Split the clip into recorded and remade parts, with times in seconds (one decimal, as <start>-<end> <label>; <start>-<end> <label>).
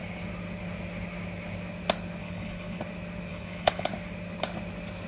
0.0-2.2 recorded; 2.2-2.8 remade; 2.8-3.3 recorded; 3.3-3.9 remade; 3.9-5.1 recorded